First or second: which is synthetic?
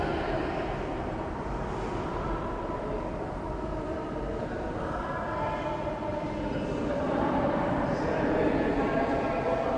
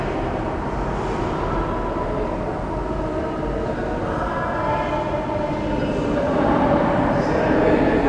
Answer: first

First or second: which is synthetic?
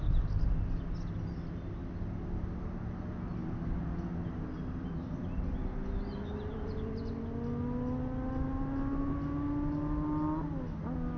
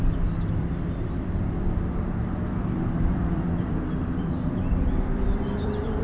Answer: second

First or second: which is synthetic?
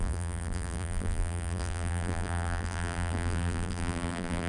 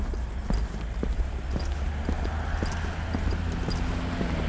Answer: first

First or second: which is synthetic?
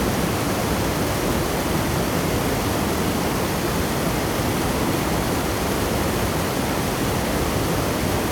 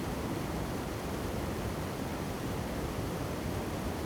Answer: second